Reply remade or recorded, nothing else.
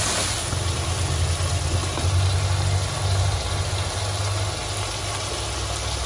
recorded